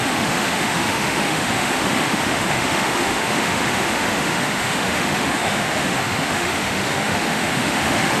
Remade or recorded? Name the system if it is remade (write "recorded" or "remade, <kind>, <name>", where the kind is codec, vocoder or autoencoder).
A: remade, autoencoder, DAC-VAE